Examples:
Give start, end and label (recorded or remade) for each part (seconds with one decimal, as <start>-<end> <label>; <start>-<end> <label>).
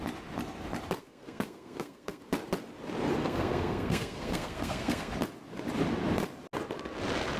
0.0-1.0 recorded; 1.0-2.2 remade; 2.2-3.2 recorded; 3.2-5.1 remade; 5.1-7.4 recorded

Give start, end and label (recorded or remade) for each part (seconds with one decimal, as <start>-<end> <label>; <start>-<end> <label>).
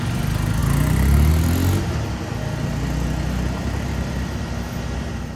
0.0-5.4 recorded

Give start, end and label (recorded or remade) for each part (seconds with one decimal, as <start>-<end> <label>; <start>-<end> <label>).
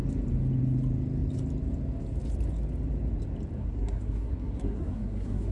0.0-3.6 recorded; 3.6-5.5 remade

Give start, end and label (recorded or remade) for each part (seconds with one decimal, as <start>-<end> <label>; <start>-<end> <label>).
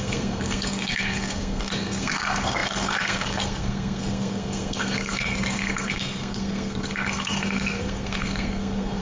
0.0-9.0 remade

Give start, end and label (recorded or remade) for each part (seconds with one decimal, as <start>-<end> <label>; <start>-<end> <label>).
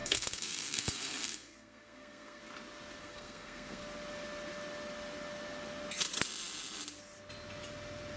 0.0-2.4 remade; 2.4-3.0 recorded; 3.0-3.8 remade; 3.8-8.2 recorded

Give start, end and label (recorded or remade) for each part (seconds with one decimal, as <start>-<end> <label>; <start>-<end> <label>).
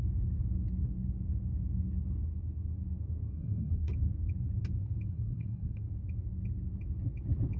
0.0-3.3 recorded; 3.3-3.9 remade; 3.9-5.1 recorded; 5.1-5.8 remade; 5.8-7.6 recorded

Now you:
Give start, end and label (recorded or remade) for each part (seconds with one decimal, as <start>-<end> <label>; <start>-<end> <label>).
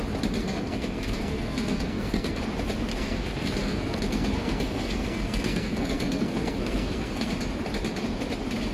0.0-0.4 recorded; 0.4-2.4 remade; 2.4-2.9 recorded; 2.9-7.3 remade; 7.3-8.7 recorded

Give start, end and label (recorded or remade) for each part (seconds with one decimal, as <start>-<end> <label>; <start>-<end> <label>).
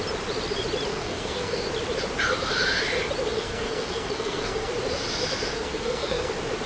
0.0-0.9 recorded; 0.9-1.6 remade; 1.6-3.3 recorded; 3.3-4.7 remade; 4.7-5.5 recorded; 5.5-6.3 remade; 6.3-6.7 recorded